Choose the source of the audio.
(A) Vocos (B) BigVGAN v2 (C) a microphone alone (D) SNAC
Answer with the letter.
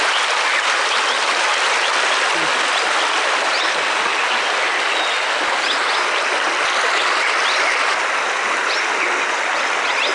C